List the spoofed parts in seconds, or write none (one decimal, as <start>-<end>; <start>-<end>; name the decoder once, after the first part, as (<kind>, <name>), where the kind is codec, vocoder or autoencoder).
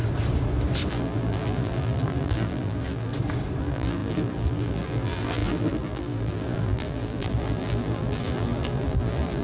0.9-3.1 (vocoder, BigVGAN v2); 3.6-9.4